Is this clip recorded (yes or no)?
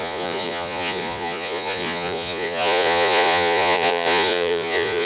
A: no